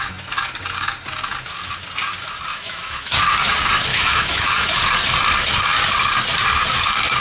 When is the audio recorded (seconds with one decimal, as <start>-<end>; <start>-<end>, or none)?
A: 0.0-2.5; 3.2-3.9; 4.8-7.2